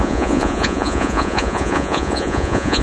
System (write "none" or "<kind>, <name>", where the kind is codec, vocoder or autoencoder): vocoder, Vocos